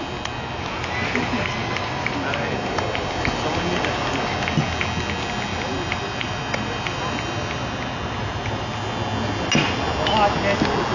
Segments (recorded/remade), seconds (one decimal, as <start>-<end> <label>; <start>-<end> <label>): 0.0-5.5 recorded; 5.5-8.7 remade; 8.7-10.9 recorded